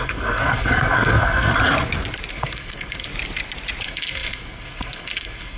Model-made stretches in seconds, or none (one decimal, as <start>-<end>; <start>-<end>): 0.0-1.5; 2.3-3.1; 3.8-5.6